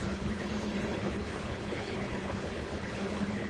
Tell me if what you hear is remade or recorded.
remade